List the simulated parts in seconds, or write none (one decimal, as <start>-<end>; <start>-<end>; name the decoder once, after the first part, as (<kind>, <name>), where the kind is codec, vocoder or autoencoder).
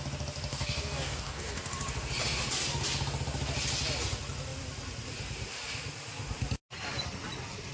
0.5-1.7 (codec, DAC)